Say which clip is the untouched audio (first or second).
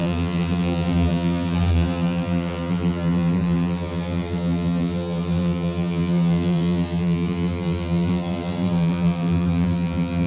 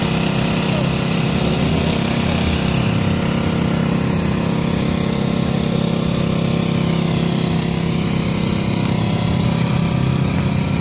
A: second